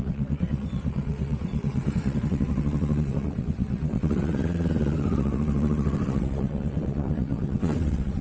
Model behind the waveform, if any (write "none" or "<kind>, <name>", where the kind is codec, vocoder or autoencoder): vocoder, WaveNeXt